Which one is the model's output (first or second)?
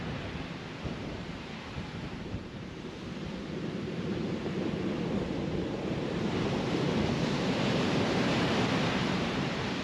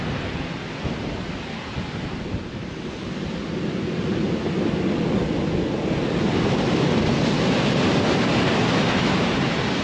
first